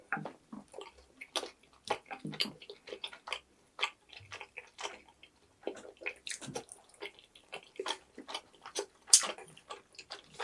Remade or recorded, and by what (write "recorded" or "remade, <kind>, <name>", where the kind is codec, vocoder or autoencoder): recorded